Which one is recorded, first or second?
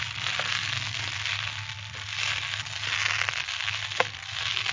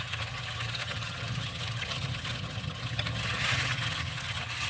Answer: first